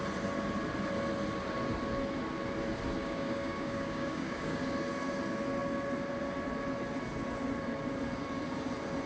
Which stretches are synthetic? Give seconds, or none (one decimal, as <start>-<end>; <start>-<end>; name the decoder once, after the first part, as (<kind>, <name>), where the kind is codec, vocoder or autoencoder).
3.0-4.6 (codec, DAC)